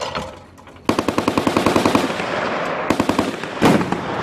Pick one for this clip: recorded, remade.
recorded